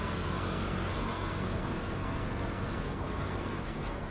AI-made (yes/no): yes